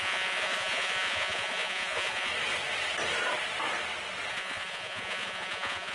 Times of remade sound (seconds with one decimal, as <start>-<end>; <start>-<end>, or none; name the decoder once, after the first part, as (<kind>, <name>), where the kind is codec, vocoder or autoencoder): 0.0-2.3 (vocoder, Vocos); 4.3-5.9